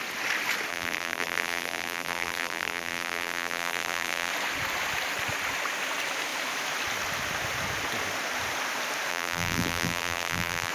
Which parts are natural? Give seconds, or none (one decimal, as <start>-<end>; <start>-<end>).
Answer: 0.0-0.7; 4.3-9.1